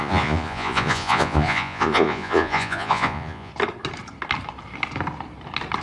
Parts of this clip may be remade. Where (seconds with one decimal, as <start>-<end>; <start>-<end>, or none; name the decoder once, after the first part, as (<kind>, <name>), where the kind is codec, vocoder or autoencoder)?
0.0-3.5 (vocoder, Vocos)